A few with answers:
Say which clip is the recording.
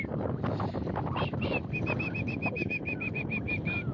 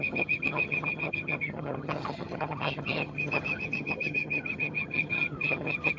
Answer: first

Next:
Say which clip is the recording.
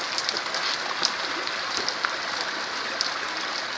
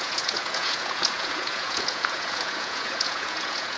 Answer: first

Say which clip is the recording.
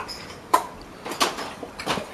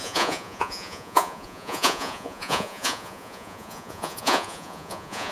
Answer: first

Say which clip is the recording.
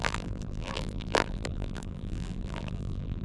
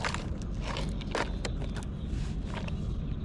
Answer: second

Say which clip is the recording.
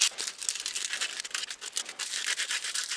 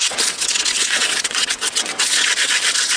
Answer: first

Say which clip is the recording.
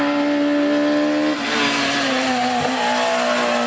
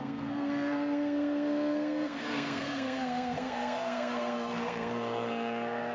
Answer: first